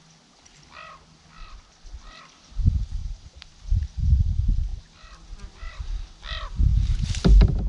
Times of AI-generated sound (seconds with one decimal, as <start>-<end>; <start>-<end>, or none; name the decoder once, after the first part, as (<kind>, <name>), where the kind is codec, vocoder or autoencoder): 3.0-3.6 (vocoder, BigVGAN v2); 6.7-7.7